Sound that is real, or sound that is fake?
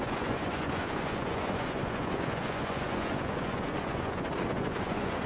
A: fake